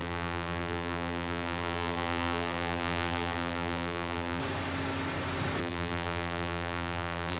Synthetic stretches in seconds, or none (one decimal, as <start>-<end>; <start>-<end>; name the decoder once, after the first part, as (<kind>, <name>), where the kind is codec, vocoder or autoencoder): 0.0-4.4 (vocoder, BigVGAN v2); 5.6-7.4